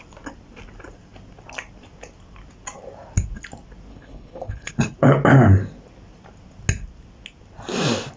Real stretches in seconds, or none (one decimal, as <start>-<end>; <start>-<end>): 0.0-3.9; 4.7-8.2